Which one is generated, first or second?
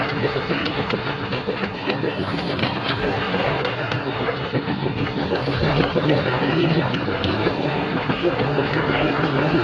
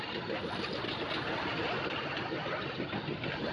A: first